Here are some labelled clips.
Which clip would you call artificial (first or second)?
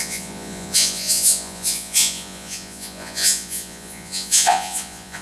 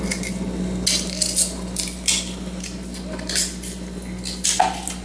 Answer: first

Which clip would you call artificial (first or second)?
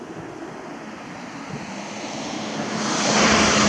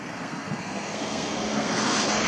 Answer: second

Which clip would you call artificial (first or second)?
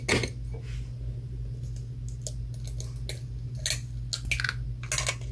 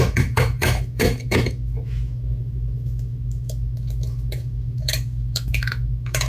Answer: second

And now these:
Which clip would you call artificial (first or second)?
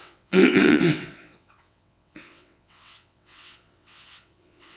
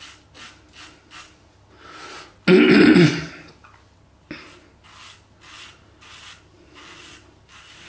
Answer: first